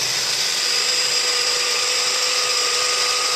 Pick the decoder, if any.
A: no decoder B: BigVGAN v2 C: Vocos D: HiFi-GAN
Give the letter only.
A